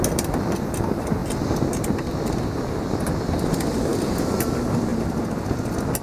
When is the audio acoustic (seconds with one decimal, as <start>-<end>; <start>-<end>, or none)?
0.0-3.9; 4.4-6.0